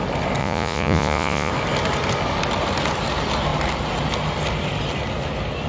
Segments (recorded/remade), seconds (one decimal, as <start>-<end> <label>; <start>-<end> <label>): 0.0-0.4 recorded; 0.4-1.5 remade; 1.5-5.7 recorded